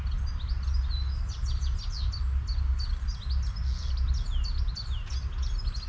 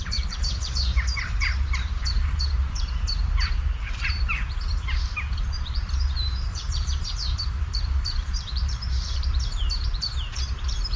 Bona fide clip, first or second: first